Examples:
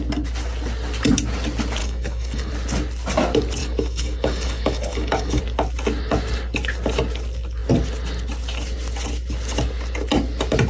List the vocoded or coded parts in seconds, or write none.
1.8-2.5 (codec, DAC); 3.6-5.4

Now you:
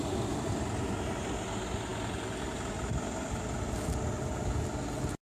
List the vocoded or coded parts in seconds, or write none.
none

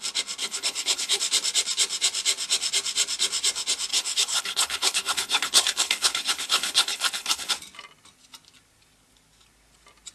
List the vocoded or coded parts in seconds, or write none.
0.4-1.2 (codec, HILCodec); 3.9-7.5